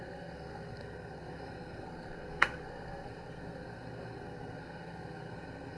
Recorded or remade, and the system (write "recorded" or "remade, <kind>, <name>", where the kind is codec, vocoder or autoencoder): remade, codec, SNAC